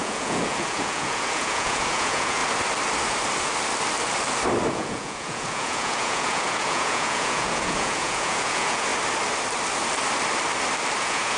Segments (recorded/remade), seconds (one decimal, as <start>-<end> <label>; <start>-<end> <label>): 0.0-2.4 remade; 2.4-4.7 recorded; 4.7-8.9 remade; 8.9-11.0 recorded; 11.0-11.4 remade